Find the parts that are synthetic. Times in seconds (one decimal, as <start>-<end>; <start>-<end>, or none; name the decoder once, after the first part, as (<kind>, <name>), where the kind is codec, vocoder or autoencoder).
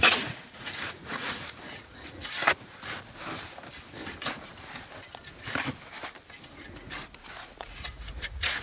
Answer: 0.0-2.4 (vocoder, Vocos); 7.6-8.6